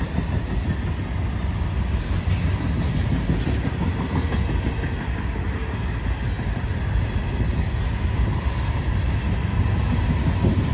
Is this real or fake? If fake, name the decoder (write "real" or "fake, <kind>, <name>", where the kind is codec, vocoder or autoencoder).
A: real